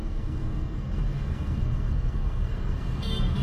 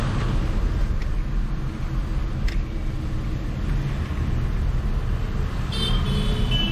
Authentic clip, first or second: second